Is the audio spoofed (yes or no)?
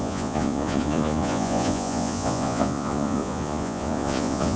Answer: yes